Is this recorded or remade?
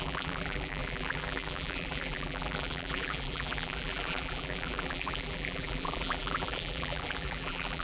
remade